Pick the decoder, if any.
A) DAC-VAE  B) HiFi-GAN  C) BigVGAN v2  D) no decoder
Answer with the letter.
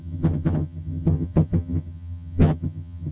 B